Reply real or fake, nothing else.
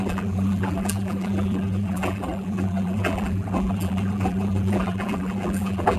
fake